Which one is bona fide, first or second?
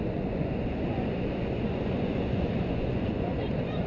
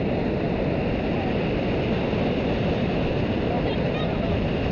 second